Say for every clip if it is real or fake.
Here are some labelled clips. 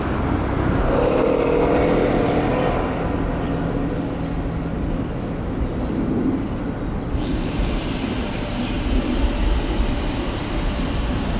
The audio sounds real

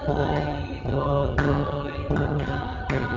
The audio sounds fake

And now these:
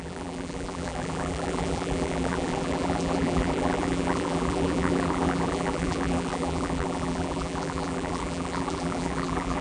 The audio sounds fake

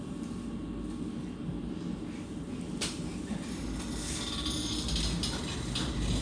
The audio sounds real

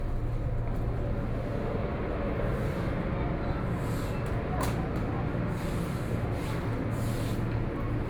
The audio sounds real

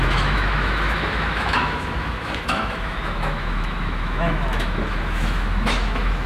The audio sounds fake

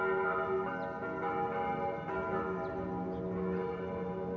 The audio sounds real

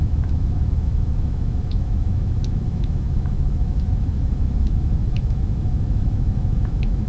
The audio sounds fake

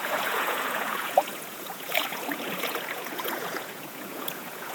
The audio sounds fake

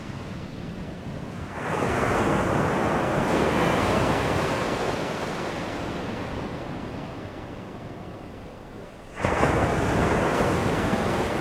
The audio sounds fake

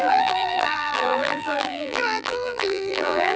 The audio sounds fake